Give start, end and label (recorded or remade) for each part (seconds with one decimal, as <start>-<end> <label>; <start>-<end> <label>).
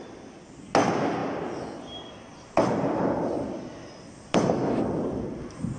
0.0-5.8 recorded